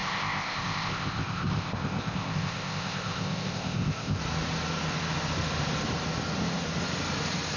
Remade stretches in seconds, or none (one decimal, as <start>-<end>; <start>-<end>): 0.0-4.2